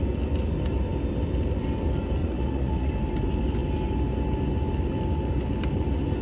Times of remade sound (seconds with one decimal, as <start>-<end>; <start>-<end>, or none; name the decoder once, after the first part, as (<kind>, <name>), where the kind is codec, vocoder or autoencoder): 2.2-2.9 (vocoder, Vocos)